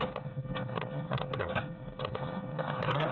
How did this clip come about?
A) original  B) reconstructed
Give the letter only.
B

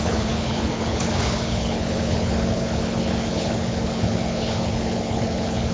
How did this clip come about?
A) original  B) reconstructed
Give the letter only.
B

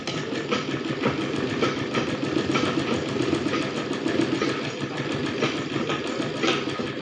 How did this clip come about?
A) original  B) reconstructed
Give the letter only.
A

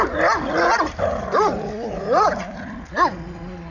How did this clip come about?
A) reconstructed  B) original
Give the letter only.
B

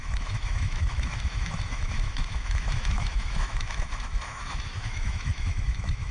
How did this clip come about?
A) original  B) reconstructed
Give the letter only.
B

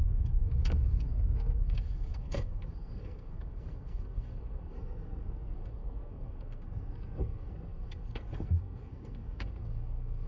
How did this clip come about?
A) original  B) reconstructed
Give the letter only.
B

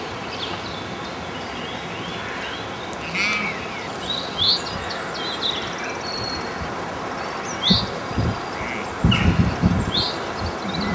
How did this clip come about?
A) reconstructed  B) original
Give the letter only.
B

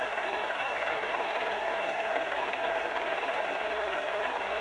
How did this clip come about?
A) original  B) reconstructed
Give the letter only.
B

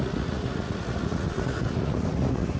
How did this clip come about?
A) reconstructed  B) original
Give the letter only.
A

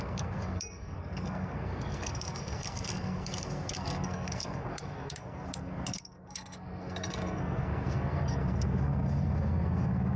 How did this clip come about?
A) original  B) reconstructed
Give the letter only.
B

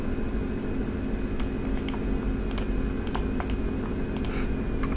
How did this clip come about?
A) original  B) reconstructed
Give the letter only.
A